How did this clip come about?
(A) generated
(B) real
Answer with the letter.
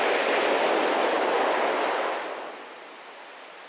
B